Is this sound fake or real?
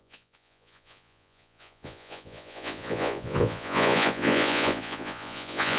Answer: fake